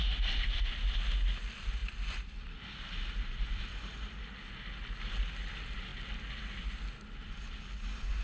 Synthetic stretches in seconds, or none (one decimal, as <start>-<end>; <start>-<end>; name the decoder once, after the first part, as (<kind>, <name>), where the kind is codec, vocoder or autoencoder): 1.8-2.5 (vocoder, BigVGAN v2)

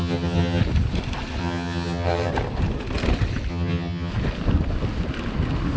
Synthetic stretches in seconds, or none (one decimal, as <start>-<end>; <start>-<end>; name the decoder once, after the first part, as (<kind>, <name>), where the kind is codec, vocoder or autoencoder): 0.0-0.6 (vocoder, HiFi-GAN); 1.4-2.3; 3.5-4.1

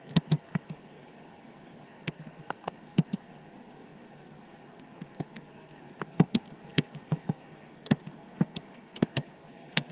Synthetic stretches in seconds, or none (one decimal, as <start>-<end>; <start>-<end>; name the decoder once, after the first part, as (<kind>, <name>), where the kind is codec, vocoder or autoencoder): 0.0-9.9 (codec, SNAC)